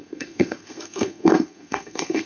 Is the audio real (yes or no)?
no